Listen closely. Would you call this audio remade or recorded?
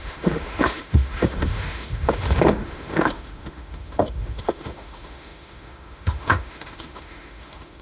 remade